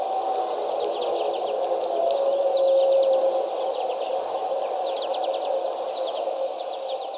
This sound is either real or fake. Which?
real